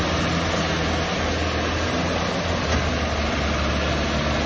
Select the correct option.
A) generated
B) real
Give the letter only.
B